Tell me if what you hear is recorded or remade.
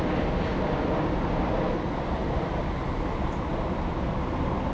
recorded